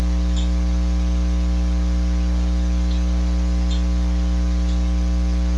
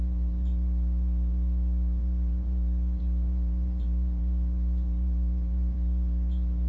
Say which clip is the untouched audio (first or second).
first